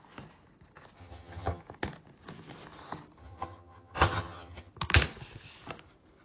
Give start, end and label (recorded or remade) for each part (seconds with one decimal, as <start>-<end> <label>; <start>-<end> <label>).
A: 0.0-1.0 recorded; 1.0-1.6 remade; 1.6-3.2 recorded; 3.2-4.7 remade; 4.7-6.2 recorded